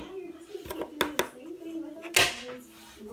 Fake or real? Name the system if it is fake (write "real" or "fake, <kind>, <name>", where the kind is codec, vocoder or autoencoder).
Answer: real